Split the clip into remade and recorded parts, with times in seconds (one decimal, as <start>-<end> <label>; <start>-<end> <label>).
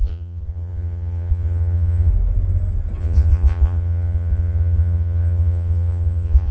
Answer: 0.0-2.1 remade; 2.1-3.0 recorded; 3.0-6.5 remade